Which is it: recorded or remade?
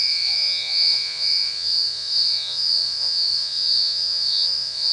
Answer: remade